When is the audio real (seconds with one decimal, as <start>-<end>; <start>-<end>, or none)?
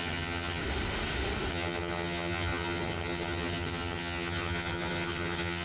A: 0.6-1.5